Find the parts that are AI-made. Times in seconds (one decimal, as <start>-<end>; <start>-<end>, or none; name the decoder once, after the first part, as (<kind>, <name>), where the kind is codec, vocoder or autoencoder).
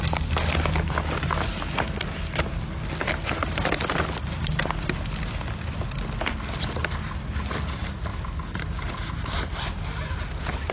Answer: 3.4-4.6 (vocoder, BigVGAN v2)